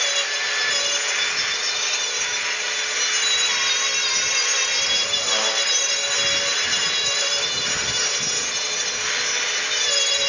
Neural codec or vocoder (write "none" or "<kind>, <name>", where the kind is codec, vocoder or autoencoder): none